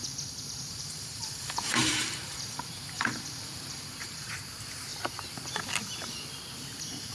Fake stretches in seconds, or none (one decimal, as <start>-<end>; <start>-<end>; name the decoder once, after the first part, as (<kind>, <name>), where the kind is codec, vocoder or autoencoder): 0.0-4.3 (vocoder, BigVGAN v2)